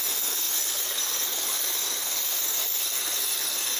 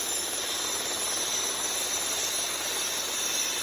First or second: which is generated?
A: first